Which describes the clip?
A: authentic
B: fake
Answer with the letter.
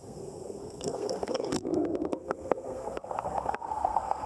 B